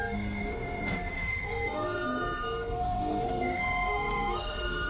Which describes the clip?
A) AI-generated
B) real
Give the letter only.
A